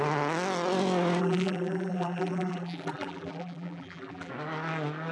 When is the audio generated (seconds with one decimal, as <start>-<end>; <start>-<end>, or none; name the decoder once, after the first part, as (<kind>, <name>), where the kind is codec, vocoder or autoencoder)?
1.2-4.3 (vocoder, BigVGAN v2)